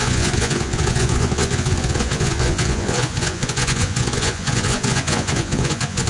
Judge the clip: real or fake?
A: fake